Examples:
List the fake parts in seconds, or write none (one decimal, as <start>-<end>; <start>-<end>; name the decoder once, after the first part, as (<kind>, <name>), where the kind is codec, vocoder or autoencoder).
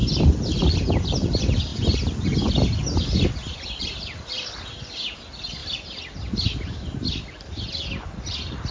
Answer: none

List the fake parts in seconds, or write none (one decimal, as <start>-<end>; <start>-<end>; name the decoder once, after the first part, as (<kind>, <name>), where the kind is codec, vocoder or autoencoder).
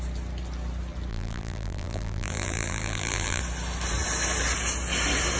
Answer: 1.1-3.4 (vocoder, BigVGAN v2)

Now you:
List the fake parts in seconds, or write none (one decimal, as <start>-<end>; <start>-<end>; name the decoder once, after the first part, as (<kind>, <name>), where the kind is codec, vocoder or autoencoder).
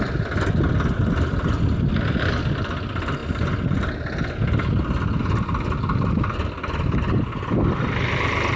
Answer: none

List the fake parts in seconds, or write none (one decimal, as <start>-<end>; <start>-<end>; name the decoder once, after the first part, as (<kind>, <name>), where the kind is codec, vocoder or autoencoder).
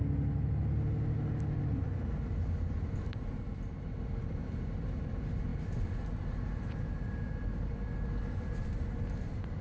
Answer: 1.7-9.6 (vocoder, BigVGAN v2)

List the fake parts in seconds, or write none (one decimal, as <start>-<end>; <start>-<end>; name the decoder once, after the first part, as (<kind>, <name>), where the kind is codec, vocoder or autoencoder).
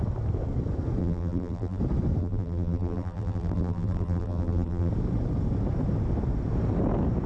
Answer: 1.0-1.8 (vocoder, BigVGAN v2); 2.2-4.9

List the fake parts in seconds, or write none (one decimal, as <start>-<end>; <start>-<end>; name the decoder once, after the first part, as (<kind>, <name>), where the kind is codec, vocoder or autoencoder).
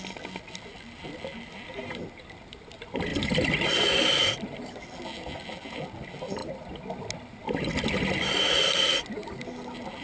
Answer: none